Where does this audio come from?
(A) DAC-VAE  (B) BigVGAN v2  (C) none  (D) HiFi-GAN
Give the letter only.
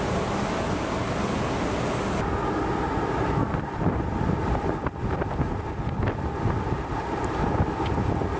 C